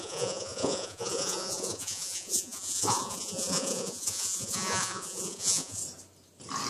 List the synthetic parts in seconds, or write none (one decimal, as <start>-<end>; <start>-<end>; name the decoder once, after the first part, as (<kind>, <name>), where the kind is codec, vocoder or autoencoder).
0.0-5.8 (vocoder, Vocos)